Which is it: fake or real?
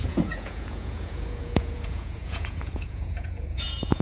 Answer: fake